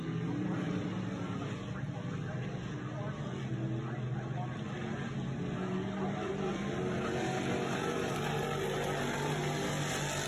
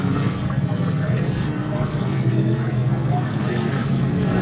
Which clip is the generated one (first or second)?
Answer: second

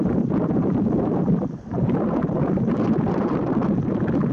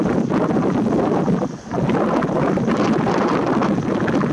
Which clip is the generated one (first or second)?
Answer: first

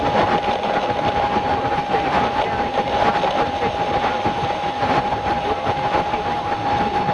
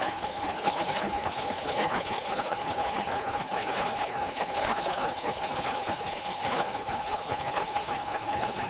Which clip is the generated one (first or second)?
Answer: second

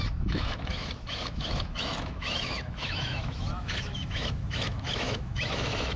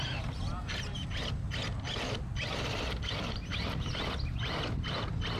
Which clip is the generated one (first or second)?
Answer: first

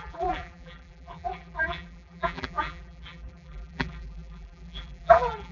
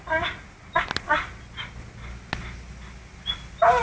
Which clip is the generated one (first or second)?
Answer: first